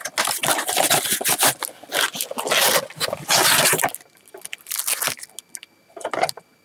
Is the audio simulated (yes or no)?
no